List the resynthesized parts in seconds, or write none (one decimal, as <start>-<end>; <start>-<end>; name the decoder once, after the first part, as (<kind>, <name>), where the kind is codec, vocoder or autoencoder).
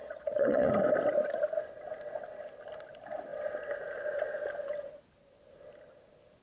0.0-0.7 (vocoder, Vocos)